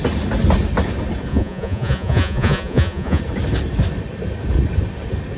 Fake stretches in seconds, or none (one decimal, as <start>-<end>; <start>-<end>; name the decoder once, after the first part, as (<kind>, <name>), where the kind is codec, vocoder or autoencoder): 1.3-3.2 (vocoder, Vocos)